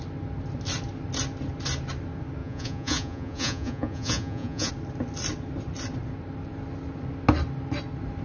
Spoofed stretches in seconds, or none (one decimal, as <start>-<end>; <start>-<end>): 2.4-4.7